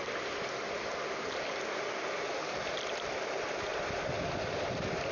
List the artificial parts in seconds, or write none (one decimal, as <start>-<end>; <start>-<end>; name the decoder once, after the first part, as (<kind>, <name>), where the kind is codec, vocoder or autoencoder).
3.7-4.5 (vocoder, BigVGAN v2)